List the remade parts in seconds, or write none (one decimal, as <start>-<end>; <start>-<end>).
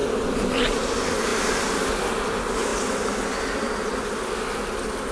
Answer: 0.0-0.5; 2.7-4.1